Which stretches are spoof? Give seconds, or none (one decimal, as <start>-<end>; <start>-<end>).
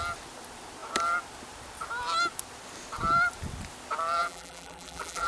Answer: 4.2-5.3